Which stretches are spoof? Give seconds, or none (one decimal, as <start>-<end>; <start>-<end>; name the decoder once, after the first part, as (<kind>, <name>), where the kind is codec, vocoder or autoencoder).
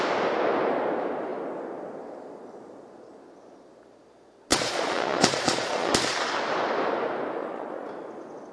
4.5-5.9 (vocoder, Vocos); 7.4-7.9